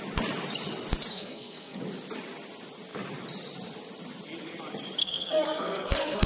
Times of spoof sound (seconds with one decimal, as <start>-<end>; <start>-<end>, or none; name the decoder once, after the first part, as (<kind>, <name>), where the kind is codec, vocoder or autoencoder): 1.1-1.8 (codec, SNAC); 5.0-6.3